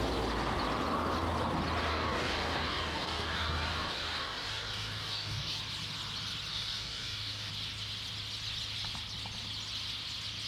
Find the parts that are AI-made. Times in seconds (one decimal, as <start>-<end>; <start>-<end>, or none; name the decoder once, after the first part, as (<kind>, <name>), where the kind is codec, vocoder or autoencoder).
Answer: 1.9-5.6 (codec, DAC); 6.5-7.5